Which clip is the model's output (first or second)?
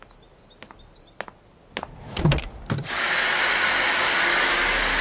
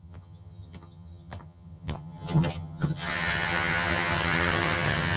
second